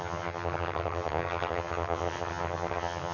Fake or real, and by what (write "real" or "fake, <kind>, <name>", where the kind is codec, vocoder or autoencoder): fake, vocoder, HiFi-GAN